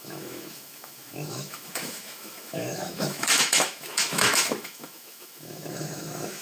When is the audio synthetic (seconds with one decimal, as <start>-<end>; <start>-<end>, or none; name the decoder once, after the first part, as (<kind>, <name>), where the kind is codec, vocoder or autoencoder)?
0.0-6.4 (autoencoder, DAC-VAE)